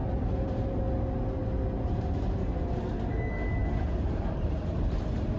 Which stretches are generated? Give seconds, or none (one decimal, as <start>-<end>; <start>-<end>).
0.0-0.8; 3.6-5.0